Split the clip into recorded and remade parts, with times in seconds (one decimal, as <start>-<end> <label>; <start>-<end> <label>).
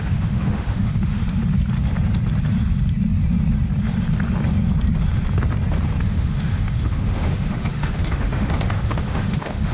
0.0-1.2 remade; 1.2-6.0 recorded; 6.0-9.7 remade